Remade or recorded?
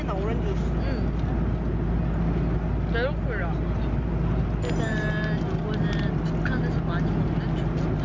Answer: recorded